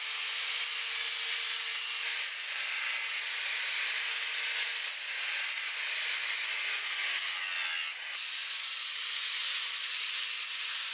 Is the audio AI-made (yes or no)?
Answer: no